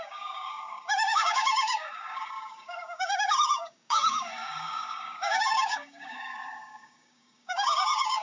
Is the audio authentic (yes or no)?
no